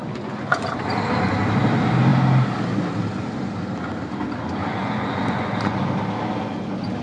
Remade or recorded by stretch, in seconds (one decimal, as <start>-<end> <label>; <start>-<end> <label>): 0.0-0.7 remade; 0.7-4.7 recorded; 4.7-5.8 remade; 5.8-7.0 recorded

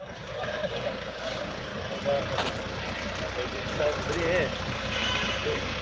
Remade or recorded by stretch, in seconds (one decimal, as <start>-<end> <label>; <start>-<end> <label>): 0.0-1.7 remade; 1.7-4.7 recorded; 4.7-5.8 remade

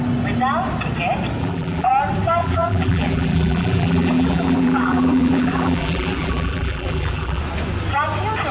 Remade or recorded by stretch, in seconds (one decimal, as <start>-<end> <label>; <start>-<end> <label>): 0.0-1.4 recorded; 1.4-1.9 remade; 1.9-2.4 recorded; 2.4-7.4 remade; 7.4-8.5 recorded

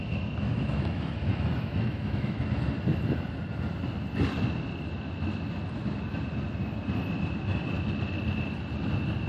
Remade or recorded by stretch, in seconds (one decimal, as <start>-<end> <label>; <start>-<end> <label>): 0.0-0.5 recorded; 0.5-2.4 remade; 2.4-9.3 recorded